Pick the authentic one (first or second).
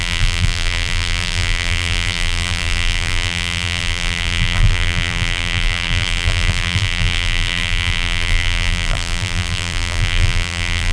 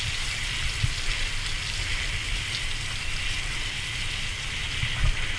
second